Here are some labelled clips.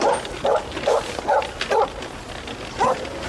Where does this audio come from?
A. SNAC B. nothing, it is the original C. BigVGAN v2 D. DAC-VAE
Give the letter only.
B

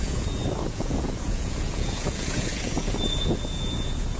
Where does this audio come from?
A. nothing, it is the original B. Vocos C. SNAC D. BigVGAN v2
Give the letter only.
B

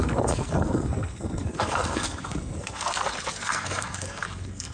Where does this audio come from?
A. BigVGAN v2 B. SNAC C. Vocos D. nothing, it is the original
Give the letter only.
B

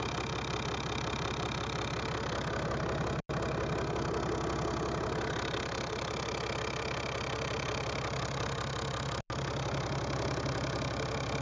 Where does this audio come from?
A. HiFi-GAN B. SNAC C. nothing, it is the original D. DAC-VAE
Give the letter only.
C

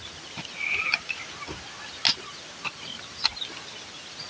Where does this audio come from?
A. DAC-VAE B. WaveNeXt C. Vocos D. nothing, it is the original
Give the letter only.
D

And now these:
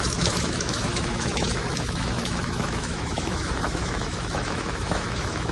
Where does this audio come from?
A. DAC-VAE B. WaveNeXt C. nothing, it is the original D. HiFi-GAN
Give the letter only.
A